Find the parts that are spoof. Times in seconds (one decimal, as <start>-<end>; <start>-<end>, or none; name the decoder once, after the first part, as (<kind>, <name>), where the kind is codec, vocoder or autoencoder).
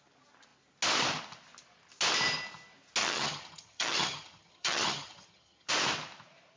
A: 3.0-5.7 (vocoder, HiFi-GAN)